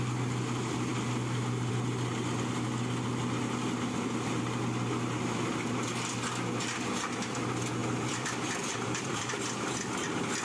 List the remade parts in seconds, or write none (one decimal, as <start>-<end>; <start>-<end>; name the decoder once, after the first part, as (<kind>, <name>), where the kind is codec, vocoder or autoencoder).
7.8-9.8 (vocoder, BigVGAN v2)